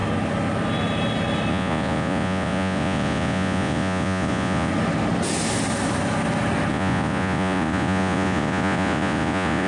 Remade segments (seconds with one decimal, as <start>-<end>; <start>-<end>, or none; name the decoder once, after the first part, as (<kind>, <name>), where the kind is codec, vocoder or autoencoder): 1.5-4.7 (vocoder, Vocos); 6.7-9.7